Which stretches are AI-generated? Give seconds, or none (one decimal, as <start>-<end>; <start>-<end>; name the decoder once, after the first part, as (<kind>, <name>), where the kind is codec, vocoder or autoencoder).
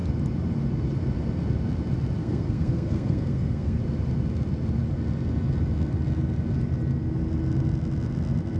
2.2-3.8 (codec, SNAC)